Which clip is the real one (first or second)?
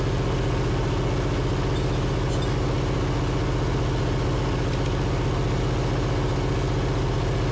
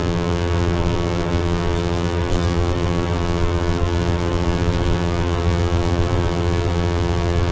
first